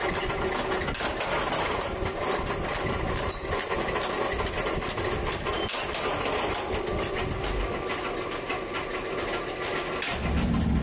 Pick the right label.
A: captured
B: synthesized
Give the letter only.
A